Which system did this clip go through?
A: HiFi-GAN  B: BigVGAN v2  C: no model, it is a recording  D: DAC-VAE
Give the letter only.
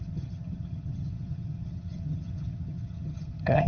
A